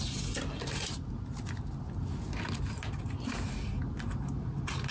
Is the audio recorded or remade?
recorded